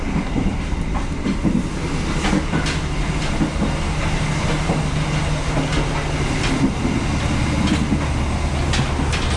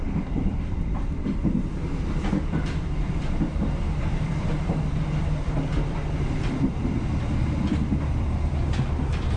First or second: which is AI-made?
second